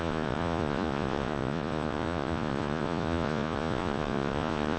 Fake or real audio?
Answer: fake